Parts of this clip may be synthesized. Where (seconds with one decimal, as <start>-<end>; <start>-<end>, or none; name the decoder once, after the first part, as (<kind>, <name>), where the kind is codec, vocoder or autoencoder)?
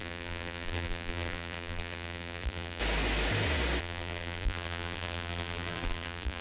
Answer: 0.0-2.8 (vocoder, BigVGAN v2); 3.8-6.4